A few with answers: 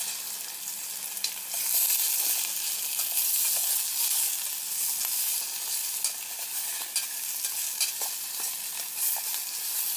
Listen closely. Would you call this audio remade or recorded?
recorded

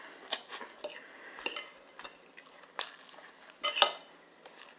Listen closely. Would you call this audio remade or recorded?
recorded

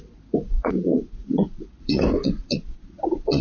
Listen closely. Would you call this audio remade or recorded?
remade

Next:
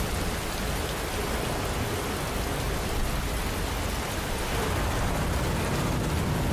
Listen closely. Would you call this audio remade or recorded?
recorded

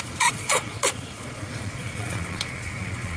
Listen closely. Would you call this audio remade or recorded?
remade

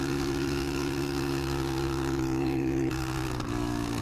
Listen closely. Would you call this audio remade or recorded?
remade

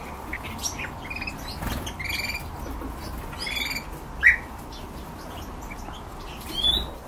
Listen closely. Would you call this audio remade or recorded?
recorded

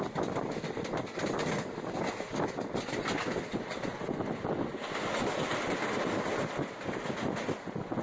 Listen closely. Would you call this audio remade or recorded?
recorded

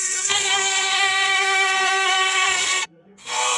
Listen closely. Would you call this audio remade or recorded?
remade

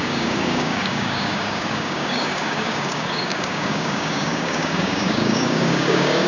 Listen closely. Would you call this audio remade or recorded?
remade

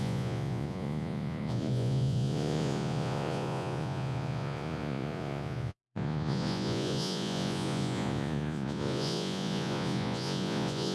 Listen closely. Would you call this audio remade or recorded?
remade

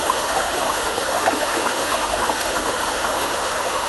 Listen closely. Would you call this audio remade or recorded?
remade